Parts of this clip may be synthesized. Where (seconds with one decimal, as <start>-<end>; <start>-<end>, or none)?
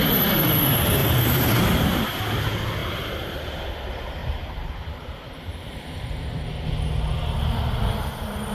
1.0-2.2; 2.8-3.4; 4.2-6.2